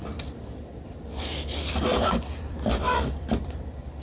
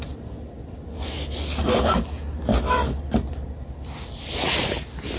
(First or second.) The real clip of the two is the second